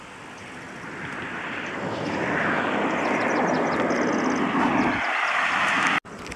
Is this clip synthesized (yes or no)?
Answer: no